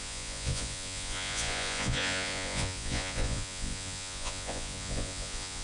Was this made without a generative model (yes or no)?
no